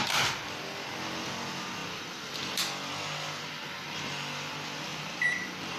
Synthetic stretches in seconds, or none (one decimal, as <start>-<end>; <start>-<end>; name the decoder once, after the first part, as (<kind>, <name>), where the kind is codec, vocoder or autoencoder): 1.8-2.6 (vocoder, BigVGAN v2); 4.9-5.8